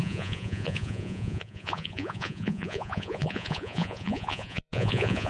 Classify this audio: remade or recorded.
remade